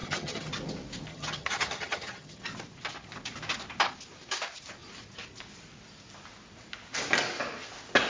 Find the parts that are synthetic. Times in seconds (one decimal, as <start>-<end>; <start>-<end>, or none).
0.0-0.5; 1.1-2.4